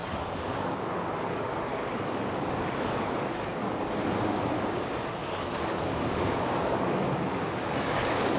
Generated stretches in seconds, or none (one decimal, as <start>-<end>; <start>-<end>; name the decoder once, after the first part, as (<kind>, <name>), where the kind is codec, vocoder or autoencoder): 0.0-3.9 (codec, DAC); 5.2-8.4